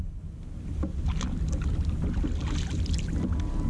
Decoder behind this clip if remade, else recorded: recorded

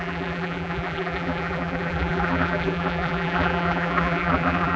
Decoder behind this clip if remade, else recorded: remade, vocoder, BigVGAN v2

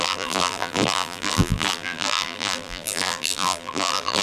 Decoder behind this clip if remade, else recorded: remade, vocoder, BigVGAN v2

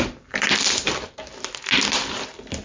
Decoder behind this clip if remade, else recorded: remade, vocoder, BigVGAN v2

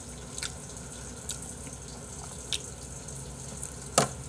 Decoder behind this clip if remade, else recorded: recorded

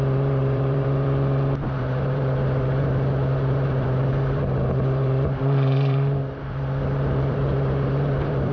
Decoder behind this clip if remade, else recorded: remade, vocoder, BigVGAN v2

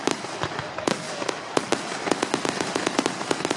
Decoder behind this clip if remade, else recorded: remade, vocoder, BigVGAN v2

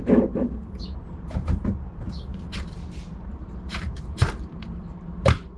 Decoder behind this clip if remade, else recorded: remade, vocoder, BigVGAN v2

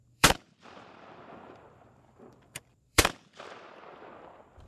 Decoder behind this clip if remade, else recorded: remade, vocoder, BigVGAN v2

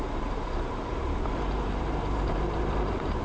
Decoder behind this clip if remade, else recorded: remade, vocoder, BigVGAN v2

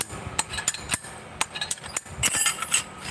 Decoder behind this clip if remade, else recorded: recorded